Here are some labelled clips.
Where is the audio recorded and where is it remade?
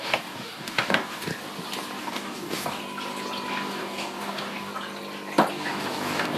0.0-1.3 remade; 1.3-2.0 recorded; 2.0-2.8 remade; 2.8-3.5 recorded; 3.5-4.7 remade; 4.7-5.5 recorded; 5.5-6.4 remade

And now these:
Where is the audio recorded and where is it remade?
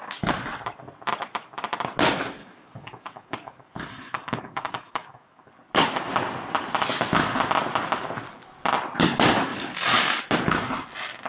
0.0-2.4 recorded; 2.4-5.5 remade; 5.5-9.5 recorded; 9.5-10.2 remade; 10.2-11.3 recorded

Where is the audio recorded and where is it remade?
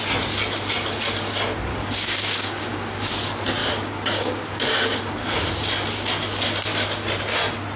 0.0-1.7 recorded; 1.7-3.1 remade; 3.1-3.6 recorded; 3.6-5.4 remade; 5.4-7.8 recorded